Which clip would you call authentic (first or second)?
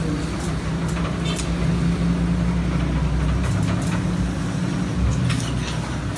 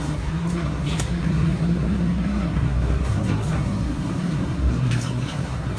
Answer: first